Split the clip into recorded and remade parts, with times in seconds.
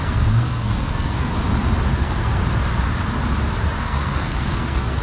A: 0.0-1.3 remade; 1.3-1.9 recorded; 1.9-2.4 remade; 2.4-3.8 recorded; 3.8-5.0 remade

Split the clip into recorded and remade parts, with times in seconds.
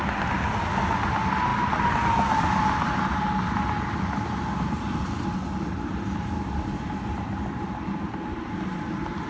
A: 0.0-9.3 recorded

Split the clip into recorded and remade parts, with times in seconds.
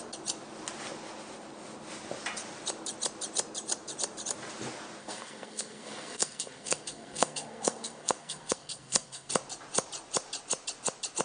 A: 0.0-5.0 recorded; 5.0-9.3 remade; 9.3-11.2 recorded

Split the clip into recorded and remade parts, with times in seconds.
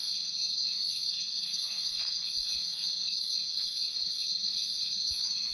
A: 0.0-5.5 remade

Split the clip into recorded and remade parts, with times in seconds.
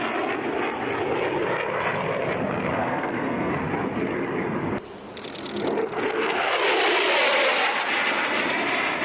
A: 0.0-2.7 recorded; 2.7-3.5 remade; 3.5-9.0 recorded